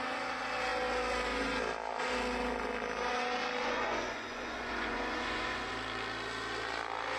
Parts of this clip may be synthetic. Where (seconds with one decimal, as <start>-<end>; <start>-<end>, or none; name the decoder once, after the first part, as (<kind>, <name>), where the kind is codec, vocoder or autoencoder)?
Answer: 3.6-5.7 (vocoder, Vocos)